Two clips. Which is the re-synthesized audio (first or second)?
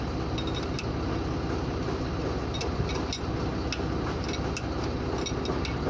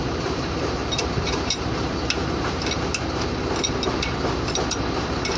second